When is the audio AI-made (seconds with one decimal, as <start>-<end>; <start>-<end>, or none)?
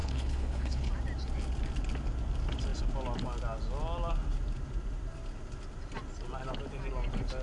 0.0-0.9